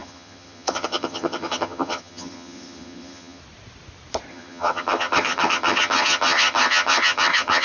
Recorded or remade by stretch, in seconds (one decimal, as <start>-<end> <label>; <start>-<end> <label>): 0.0-3.4 remade; 3.4-4.3 recorded; 4.3-7.6 remade